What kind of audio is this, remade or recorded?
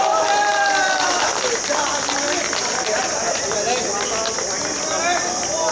recorded